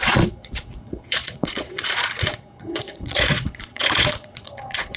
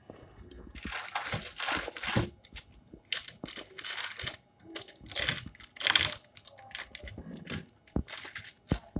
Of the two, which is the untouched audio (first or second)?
second